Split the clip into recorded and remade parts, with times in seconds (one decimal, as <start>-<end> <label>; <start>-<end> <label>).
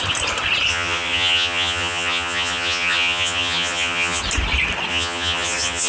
0.0-0.7 recorded; 0.7-4.2 remade; 4.2-4.9 recorded; 4.9-5.9 remade